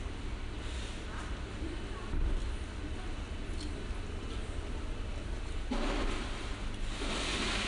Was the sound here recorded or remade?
recorded